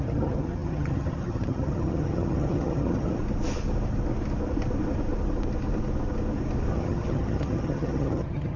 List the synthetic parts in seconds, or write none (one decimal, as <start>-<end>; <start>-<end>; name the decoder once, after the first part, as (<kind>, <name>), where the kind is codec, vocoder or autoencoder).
0.0-3.2 (vocoder, HiFi-GAN); 6.7-8.6